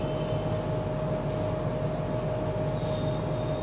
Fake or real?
real